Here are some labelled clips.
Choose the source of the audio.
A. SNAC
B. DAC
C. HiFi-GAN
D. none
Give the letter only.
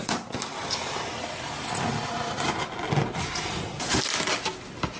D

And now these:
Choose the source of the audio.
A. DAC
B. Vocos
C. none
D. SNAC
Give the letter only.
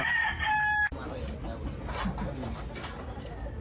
C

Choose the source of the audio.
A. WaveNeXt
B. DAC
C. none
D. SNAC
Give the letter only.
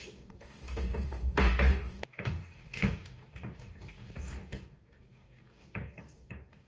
B